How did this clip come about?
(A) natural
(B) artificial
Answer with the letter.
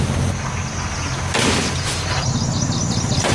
A